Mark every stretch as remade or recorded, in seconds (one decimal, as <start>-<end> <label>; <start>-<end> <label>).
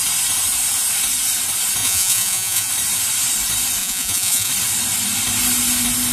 0.0-1.8 recorded; 1.8-2.7 remade; 2.7-3.8 recorded; 3.8-4.5 remade; 4.5-6.1 recorded